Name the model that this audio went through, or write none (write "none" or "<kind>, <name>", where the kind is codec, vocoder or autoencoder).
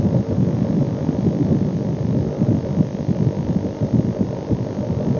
none